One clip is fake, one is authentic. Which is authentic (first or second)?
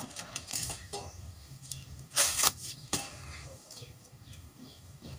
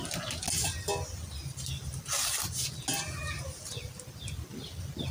second